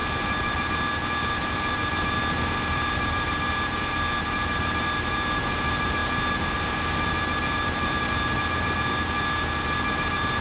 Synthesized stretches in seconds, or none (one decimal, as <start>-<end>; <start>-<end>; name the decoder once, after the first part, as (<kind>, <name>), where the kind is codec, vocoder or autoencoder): 0.0-10.4 (vocoder, BigVGAN v2)